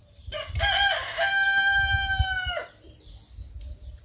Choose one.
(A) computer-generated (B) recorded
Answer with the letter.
B